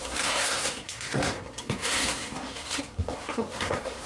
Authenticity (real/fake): fake